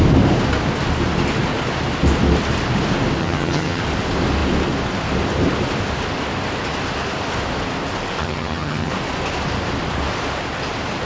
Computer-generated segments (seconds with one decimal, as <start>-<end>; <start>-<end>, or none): 3.2-3.8; 8.2-8.9